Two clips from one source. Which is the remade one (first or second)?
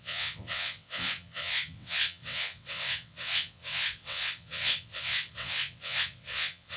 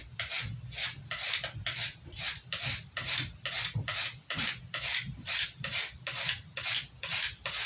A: first